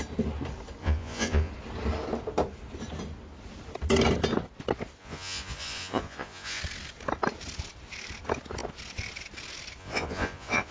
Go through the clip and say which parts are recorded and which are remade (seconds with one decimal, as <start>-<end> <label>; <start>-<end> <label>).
0.0-0.8 recorded; 0.8-1.5 remade; 1.5-5.0 recorded; 5.0-6.6 remade; 6.6-9.8 recorded; 9.8-10.7 remade